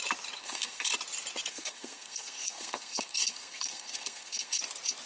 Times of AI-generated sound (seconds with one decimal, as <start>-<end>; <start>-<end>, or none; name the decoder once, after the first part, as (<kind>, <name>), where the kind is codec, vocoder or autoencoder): 0.4-0.9 (codec, SNAC); 1.5-4.6